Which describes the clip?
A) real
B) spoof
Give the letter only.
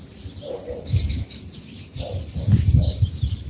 B